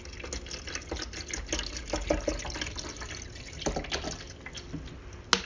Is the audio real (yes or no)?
yes